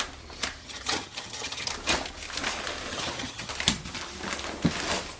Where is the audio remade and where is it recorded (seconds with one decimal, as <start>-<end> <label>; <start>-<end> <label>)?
0.0-0.6 recorded; 0.6-1.7 remade; 1.7-2.9 recorded; 2.9-3.5 remade; 3.5-5.2 recorded